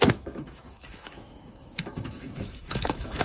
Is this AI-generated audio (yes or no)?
yes